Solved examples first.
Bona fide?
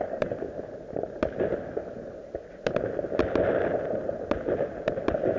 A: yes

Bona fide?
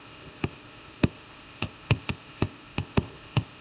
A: no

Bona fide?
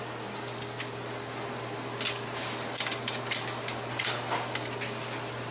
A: yes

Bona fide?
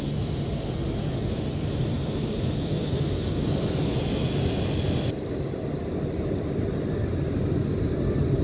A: yes